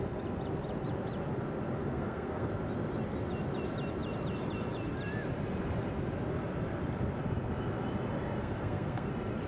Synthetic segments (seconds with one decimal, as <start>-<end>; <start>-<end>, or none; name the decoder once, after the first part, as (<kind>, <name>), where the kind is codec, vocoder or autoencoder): 1.9-2.5 (codec, SNAC); 8.4-9.1

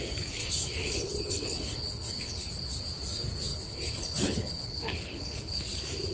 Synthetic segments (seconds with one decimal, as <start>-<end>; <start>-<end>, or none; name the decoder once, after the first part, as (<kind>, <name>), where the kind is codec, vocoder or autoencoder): 0.4-2.5 (codec, HILCodec); 3.5-5.6

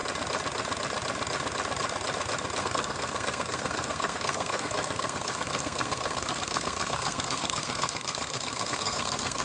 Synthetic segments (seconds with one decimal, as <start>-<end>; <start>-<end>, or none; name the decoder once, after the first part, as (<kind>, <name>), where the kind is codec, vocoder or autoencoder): 2.6-9.4 (codec, SNAC)

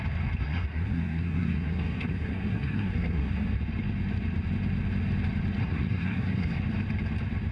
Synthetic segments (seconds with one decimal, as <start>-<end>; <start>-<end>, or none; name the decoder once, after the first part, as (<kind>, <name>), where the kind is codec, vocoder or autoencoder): 0.4-3.6 (codec, SNAC); 5.6-6.6

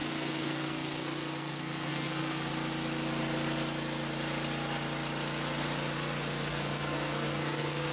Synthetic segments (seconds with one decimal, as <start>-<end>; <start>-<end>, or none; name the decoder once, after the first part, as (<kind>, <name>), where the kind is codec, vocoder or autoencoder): 0.0-2.5 (codec, SNAC); 6.5-7.9

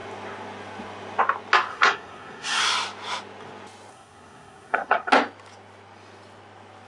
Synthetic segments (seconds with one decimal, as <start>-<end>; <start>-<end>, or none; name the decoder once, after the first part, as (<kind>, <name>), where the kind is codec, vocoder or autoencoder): 1.7-2.6 (codec, SNAC); 3.9-5.1

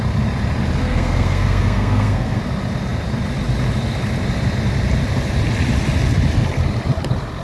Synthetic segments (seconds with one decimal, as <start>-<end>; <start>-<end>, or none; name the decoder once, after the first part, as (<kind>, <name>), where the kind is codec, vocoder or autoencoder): 0.8-2.4 (codec, SNAC)

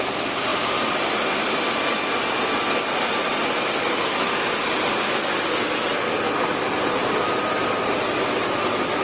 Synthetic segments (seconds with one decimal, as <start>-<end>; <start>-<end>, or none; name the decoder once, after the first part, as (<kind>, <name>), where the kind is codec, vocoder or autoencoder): none